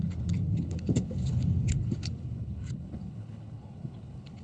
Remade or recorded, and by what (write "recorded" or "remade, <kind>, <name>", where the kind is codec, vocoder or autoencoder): remade, codec, HILCodec